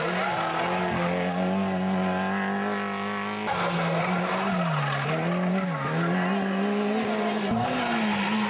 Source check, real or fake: real